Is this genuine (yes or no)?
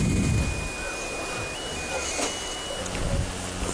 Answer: yes